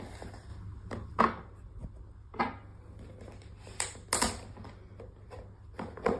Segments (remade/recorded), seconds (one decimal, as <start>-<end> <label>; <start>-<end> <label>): 0.0-6.2 recorded